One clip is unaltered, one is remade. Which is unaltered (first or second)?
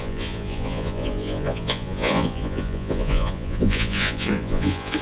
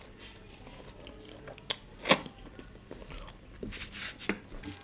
second